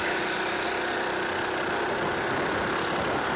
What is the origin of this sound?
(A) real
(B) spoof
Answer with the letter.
A